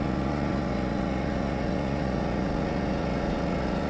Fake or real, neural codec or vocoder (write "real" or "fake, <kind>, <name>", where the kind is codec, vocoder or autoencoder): fake, vocoder, Vocos